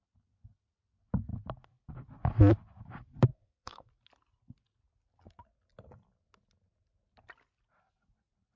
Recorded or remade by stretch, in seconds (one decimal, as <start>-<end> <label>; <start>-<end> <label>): 0.0-3.3 recorded; 3.3-3.9 remade; 3.9-8.6 recorded